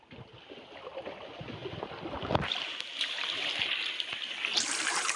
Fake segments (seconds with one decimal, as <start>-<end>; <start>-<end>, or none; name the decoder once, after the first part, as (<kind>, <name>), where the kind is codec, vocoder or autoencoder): none